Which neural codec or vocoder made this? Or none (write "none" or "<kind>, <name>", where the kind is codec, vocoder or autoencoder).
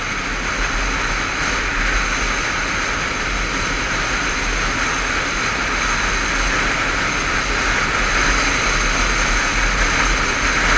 none